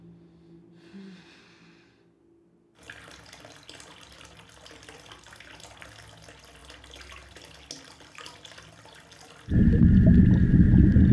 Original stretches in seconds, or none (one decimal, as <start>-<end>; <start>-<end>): 0.0-11.1